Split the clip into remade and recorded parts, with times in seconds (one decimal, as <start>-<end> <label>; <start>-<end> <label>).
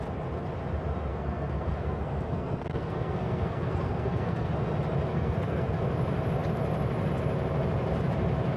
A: 0.0-1.1 recorded; 1.1-4.5 remade; 4.5-5.1 recorded; 5.1-5.9 remade; 5.9-8.6 recorded